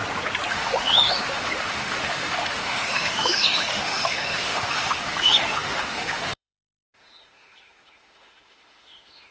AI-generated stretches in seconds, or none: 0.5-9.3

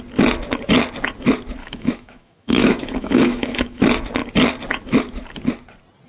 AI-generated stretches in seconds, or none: 1.6-3.8

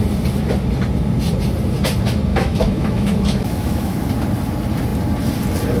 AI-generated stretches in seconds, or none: 2.3-4.0

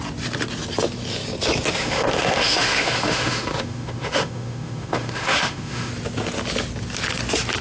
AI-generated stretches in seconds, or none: 1.8-5.9

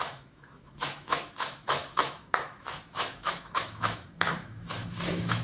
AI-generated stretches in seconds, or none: 0.0-5.4